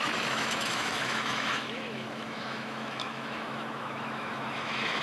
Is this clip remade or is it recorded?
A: remade